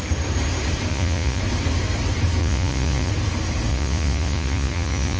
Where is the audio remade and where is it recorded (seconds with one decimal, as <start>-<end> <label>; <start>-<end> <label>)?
0.0-0.9 recorded; 0.9-1.4 remade; 1.4-2.4 recorded; 2.4-3.1 remade; 3.1-3.7 recorded; 3.7-5.2 remade